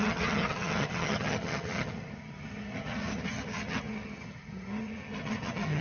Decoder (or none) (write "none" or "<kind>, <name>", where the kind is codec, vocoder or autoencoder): vocoder, HiFi-GAN